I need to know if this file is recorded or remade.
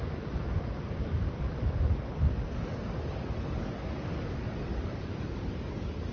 remade